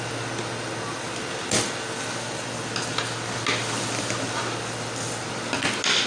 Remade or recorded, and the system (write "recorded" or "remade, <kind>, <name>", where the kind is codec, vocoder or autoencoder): recorded